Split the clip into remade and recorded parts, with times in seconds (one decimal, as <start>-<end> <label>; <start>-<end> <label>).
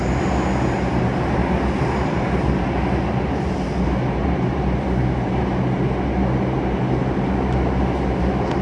0.0-8.6 recorded